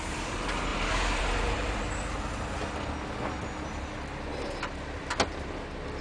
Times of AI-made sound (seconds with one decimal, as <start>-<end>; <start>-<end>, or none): 0.7-1.8; 4.3-5.1